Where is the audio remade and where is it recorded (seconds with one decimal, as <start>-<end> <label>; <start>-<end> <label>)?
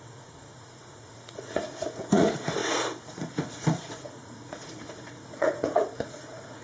0.0-6.6 remade